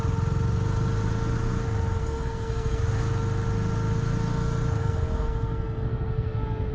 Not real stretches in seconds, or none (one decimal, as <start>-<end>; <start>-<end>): 2.0-2.8; 4.8-6.7